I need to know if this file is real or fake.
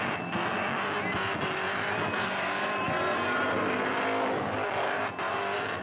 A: real